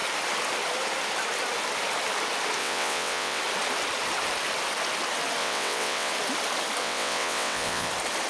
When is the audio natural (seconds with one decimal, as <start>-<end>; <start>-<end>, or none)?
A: 0.0-2.6; 3.4-5.4; 6.1-6.8; 7.9-8.3